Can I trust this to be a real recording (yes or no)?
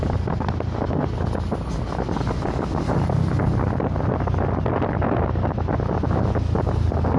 yes